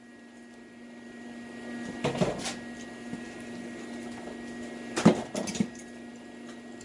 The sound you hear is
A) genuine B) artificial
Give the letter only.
A